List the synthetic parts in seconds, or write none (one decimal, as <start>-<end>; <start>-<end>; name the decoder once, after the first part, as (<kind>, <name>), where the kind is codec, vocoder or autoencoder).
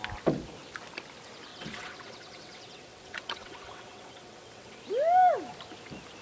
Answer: 1.5-4.8 (vocoder, WaveNeXt)